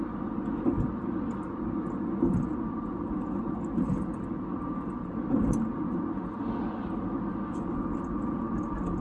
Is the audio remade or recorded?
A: recorded